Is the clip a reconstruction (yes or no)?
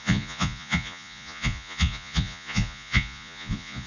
yes